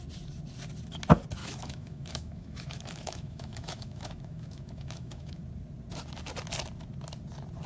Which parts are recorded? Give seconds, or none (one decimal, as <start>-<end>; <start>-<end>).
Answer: 0.0-1.4; 5.4-7.7